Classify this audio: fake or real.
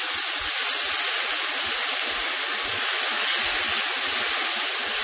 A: real